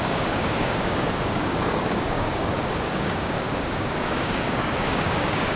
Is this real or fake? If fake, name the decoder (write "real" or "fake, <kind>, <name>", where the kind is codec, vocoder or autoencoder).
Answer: fake, codec, DAC